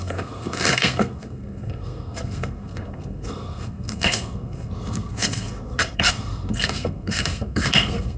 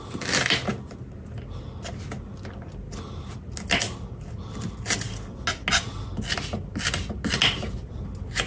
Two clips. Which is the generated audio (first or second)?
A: first